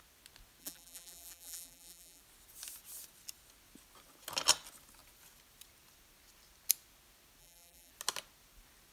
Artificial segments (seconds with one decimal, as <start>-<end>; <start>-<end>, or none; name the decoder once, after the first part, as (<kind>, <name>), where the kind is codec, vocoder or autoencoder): 0.6-2.2 (vocoder, BigVGAN v2); 7.4-7.9